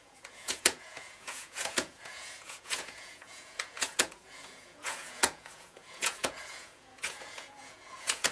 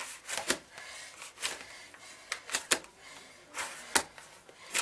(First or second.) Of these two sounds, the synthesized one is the first